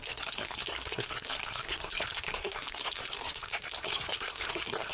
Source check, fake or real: fake